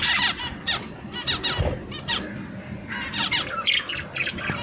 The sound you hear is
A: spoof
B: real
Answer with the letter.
B